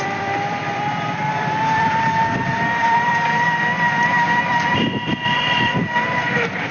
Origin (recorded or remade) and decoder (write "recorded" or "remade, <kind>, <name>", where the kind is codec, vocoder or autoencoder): remade, vocoder, BigVGAN v2